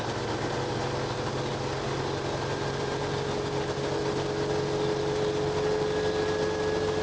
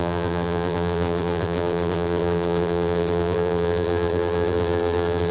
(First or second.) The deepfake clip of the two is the second